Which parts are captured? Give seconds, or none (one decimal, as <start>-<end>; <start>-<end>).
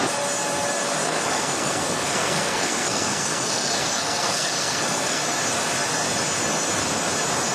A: 0.0-1.0; 5.2-7.5